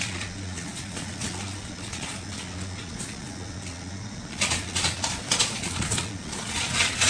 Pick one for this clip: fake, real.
fake